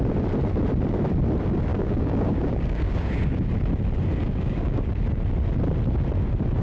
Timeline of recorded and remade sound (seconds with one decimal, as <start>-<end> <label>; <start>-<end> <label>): 0.0-1.7 recorded; 1.7-3.5 remade; 3.5-4.2 recorded; 4.2-5.0 remade; 5.0-6.6 recorded